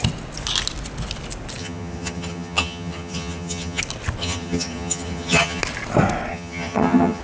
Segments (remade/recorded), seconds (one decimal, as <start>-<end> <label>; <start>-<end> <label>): 0.0-1.6 recorded; 1.6-3.8 remade; 3.8-4.2 recorded; 4.2-5.6 remade; 5.6-6.3 recorded; 6.3-7.2 remade